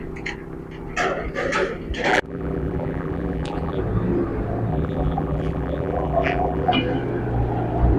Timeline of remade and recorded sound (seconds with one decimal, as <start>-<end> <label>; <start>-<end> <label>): 0.0-2.1 recorded; 2.1-3.8 remade; 3.8-4.7 recorded; 4.7-6.7 remade; 6.7-8.0 recorded